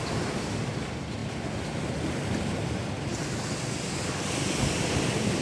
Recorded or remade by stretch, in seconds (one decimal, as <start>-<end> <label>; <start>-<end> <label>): 0.0-5.4 recorded